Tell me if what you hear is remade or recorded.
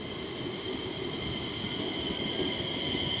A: recorded